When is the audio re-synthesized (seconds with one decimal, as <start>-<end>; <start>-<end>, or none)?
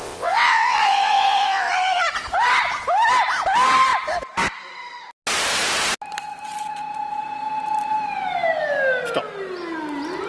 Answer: 0.0-1.7